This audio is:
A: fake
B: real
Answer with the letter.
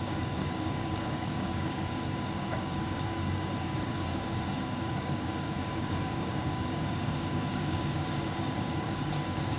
A